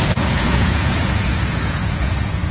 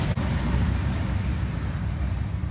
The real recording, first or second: second